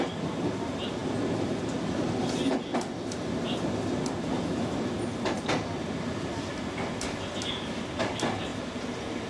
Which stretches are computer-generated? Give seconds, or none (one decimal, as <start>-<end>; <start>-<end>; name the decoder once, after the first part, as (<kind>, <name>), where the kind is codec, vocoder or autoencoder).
8.5-9.3 (vocoder, BigVGAN v2)

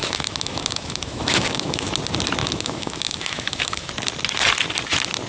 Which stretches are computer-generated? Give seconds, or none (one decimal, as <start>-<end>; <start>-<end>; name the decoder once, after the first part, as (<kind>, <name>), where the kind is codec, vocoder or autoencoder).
0.0-1.9 (autoencoder, DAC-VAE); 2.4-3.9